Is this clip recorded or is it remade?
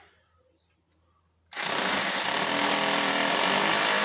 remade